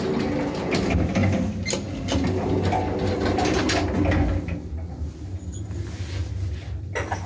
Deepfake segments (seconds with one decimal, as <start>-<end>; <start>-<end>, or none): none